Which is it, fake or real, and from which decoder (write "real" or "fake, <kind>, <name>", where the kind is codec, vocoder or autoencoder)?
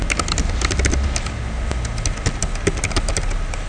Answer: real